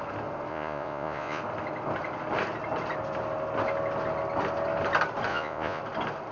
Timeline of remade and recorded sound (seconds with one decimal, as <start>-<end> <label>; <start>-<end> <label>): 0.0-0.5 recorded; 0.5-1.4 remade; 1.4-5.3 recorded; 5.3-5.8 remade; 5.8-6.3 recorded

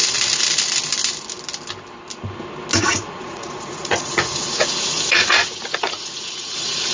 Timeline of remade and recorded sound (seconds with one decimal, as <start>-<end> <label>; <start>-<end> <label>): 0.0-2.8 recorded; 2.8-6.9 remade

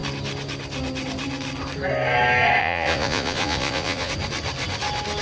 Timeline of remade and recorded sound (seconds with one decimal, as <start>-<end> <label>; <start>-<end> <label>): 0.0-2.6 recorded; 2.6-4.1 remade; 4.1-5.2 recorded

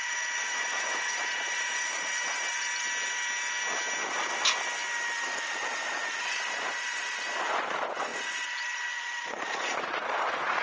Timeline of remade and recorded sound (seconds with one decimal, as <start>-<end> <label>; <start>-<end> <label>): 0.0-2.7 remade; 2.7-6.2 recorded; 6.2-10.6 remade

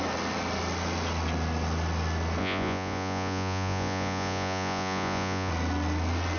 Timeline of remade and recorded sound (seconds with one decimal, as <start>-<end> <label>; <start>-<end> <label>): 0.0-2.4 recorded; 2.4-5.5 remade; 5.5-6.4 recorded

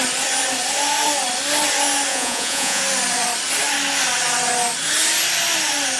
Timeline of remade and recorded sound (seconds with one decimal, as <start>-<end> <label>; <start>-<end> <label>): 0.0-2.1 recorded; 2.1-2.8 remade; 2.8-6.0 recorded

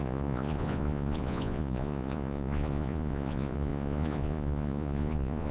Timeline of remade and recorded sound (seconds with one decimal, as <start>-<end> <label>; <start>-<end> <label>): 0.0-5.5 remade

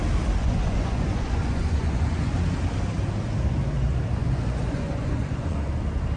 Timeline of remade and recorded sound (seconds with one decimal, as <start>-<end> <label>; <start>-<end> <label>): 0.0-0.4 recorded; 0.4-2.3 remade; 2.3-4.2 recorded; 4.2-5.7 remade; 5.7-6.2 recorded